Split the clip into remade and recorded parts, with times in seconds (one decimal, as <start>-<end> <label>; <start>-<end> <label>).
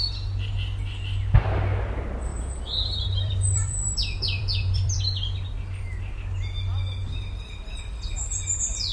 0.0-2.3 recorded; 2.3-5.0 remade; 5.0-7.0 recorded; 7.0-7.5 remade; 7.5-8.9 recorded